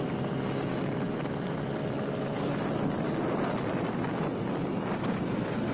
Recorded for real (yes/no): yes